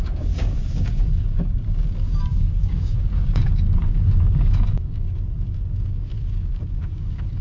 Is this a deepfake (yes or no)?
yes